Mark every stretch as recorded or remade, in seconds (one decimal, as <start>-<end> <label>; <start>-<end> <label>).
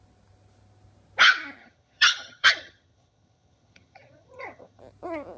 0.0-1.6 recorded; 1.6-4.8 remade; 4.8-5.4 recorded